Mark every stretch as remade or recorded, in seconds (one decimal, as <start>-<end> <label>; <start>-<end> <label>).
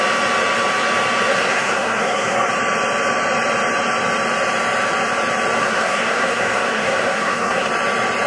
0.0-1.3 recorded; 1.3-2.5 remade; 2.5-5.6 recorded; 5.6-7.7 remade; 7.7-8.3 recorded